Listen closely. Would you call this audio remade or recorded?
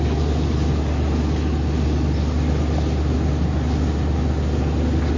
recorded